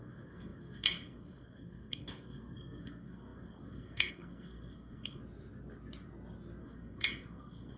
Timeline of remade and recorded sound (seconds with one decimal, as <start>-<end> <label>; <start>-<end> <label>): 0.0-5.2 remade; 5.2-6.6 recorded; 6.6-7.8 remade